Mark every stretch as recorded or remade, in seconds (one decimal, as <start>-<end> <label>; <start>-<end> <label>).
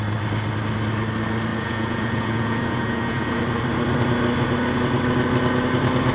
0.0-1.5 recorded; 1.5-3.4 remade; 3.4-6.1 recorded